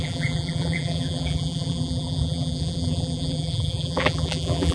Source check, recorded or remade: remade